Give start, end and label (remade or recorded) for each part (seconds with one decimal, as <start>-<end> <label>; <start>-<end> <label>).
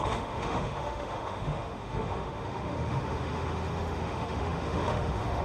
0.0-5.4 remade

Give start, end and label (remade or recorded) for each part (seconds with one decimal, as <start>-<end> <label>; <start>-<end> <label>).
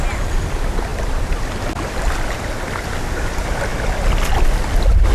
0.0-5.1 recorded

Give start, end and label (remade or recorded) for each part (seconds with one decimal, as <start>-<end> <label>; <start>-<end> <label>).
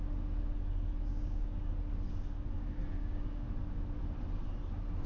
0.0-1.1 recorded; 1.1-1.7 remade; 1.7-3.0 recorded; 3.0-3.5 remade; 3.5-5.1 recorded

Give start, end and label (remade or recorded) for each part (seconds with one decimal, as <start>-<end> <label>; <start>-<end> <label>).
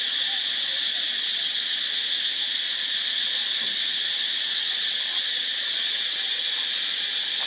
0.0-1.1 recorded; 1.1-1.8 remade; 1.8-3.4 recorded; 3.4-6.4 remade; 6.4-7.5 recorded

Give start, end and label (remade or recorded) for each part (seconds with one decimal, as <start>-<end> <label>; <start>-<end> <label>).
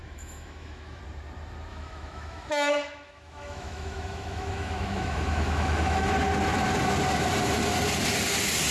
0.0-1.0 remade; 1.0-1.7 recorded; 1.7-6.1 remade; 6.1-8.7 recorded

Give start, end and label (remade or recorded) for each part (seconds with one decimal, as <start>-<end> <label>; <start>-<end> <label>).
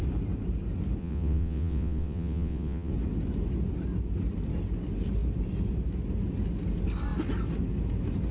0.0-1.0 recorded; 1.0-2.9 remade; 2.9-8.3 recorded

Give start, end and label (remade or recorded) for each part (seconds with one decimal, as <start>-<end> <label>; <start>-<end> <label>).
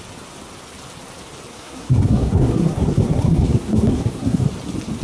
0.0-1.5 recorded; 1.5-4.5 remade; 4.5-5.0 recorded